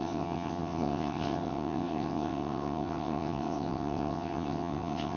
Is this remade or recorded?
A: remade